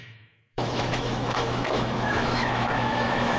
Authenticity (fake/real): fake